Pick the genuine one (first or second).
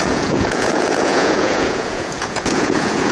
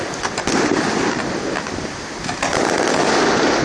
second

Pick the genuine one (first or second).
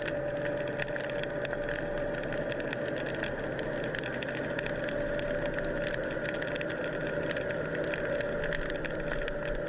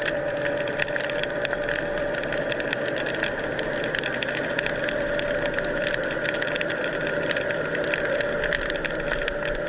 first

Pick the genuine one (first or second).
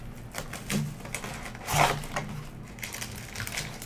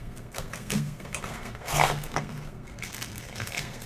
first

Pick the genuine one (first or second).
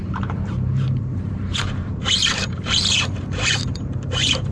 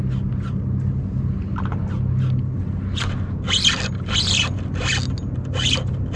second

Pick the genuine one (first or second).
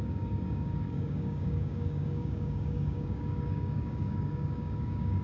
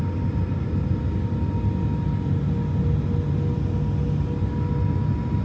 second